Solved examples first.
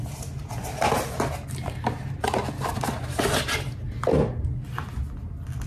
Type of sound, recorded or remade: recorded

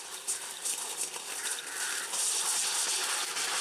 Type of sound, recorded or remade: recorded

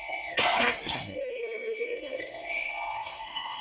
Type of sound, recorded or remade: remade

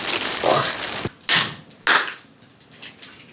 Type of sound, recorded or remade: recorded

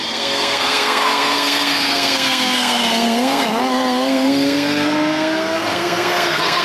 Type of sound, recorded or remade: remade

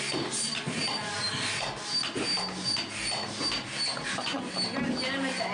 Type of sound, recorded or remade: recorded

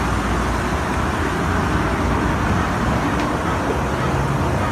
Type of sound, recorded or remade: recorded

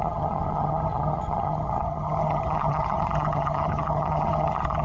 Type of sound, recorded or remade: remade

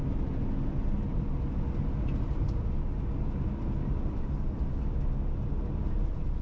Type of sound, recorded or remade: recorded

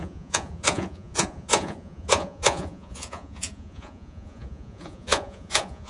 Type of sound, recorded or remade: remade